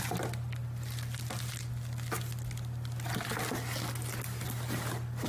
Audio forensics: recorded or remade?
recorded